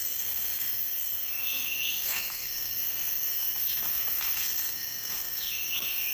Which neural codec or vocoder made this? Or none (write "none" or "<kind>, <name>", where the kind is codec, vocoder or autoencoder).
codec, SNAC